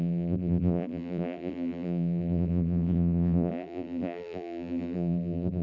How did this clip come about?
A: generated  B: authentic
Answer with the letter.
A